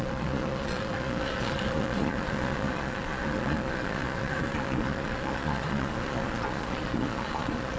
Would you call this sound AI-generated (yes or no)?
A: yes